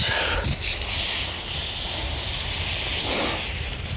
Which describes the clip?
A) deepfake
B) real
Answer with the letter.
B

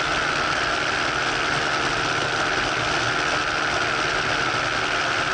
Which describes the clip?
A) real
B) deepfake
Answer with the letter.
A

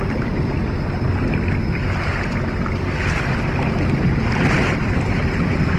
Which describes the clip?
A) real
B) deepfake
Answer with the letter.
A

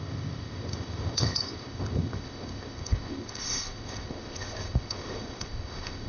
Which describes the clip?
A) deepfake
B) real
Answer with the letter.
A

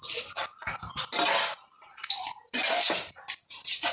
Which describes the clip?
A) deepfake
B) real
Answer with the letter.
B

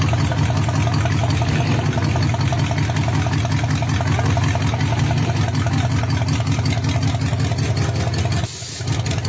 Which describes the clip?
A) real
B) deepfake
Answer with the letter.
A